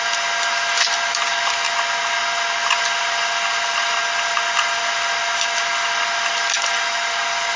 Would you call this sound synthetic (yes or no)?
no